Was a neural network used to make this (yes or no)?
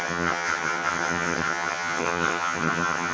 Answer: yes